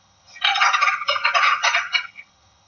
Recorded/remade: remade